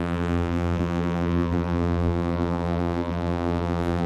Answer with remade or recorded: remade